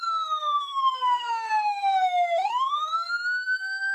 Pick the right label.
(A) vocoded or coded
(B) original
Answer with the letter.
A